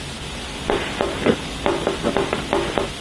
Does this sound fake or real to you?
fake